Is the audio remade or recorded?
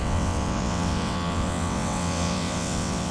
remade